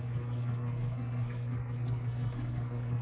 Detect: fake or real fake